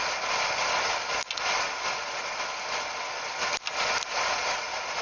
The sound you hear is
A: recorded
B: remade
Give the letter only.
A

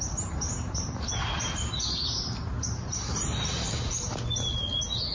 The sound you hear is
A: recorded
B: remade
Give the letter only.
A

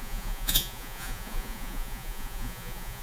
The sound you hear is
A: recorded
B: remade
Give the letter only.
B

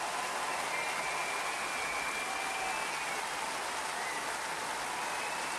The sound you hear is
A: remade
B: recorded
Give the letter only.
B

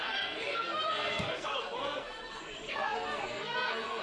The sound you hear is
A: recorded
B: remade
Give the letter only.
B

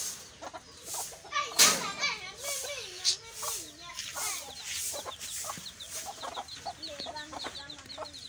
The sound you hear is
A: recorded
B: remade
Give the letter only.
A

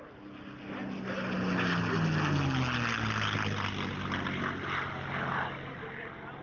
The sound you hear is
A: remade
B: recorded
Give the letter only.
B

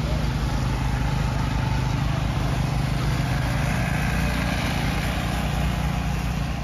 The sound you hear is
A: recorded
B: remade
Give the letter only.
A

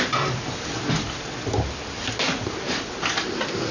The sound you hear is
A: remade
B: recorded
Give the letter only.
B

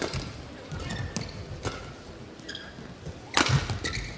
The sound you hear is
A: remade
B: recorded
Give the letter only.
B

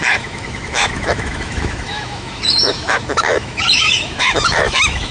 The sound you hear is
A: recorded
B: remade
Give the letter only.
B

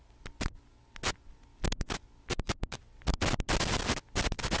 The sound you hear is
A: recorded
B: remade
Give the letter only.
A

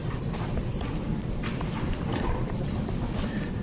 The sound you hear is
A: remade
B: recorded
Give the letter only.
A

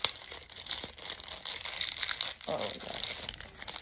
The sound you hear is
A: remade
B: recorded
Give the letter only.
B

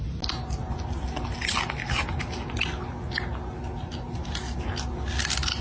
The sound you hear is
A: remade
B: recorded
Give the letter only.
B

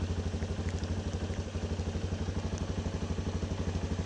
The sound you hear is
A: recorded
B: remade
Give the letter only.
A